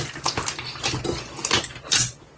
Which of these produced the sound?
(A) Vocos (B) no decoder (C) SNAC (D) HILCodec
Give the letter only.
B